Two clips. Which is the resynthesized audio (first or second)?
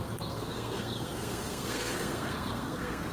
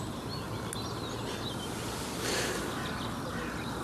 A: first